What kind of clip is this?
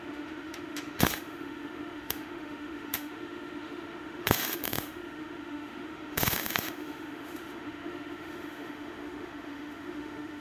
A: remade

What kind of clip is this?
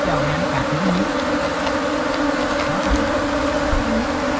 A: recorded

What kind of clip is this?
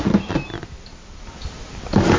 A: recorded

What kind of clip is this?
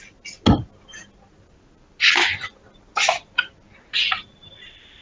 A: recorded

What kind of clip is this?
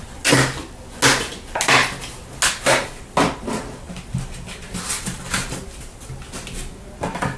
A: recorded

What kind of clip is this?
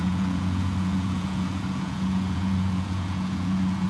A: remade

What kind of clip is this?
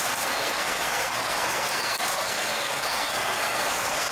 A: remade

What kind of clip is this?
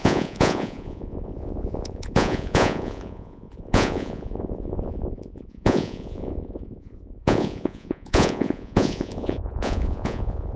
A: remade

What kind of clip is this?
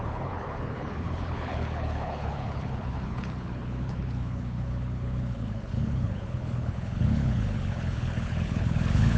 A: remade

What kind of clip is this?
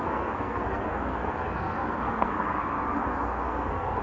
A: remade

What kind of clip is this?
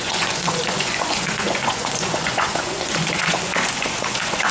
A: remade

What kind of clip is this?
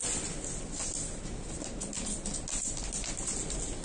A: recorded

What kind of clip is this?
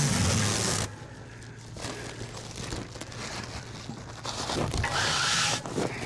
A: recorded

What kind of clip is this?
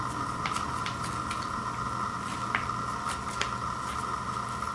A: recorded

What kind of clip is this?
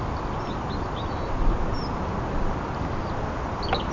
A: recorded